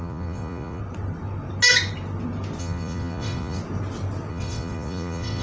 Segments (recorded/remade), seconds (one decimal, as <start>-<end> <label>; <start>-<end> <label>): 0.0-0.8 remade; 0.8-2.6 recorded; 2.6-3.6 remade; 3.6-4.3 recorded; 4.3-5.4 remade